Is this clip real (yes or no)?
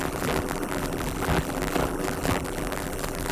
no